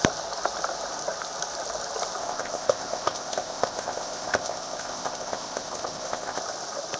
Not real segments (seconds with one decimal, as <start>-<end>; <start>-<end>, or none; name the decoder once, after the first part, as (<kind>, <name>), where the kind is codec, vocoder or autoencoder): 2.2-6.4 (codec, ZipCodec)